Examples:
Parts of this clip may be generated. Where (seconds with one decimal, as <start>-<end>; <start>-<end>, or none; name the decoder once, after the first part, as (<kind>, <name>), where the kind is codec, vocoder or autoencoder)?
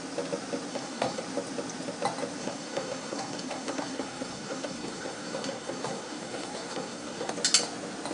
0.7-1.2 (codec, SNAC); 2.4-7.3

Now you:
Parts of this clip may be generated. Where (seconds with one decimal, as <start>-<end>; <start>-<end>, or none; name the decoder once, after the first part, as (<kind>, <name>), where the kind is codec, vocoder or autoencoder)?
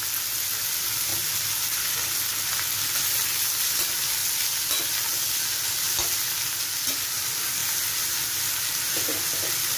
none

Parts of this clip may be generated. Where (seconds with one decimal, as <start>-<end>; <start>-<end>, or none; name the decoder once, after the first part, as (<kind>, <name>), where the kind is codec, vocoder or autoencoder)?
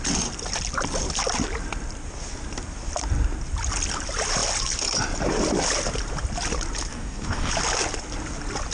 6.9-7.5 (codec, DAC)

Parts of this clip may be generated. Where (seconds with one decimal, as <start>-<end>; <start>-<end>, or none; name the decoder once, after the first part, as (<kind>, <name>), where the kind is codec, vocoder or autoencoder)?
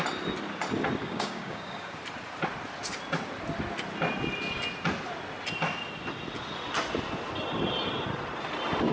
1.0-2.0 (codec, DAC)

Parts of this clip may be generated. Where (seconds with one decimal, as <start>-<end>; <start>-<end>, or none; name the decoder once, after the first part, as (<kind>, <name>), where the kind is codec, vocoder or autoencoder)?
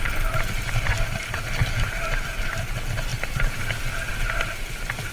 1.6-2.4 (vocoder, BigVGAN v2); 3.1-4.1